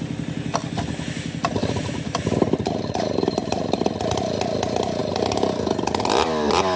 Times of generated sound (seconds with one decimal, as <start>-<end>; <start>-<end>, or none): 1.6-3.8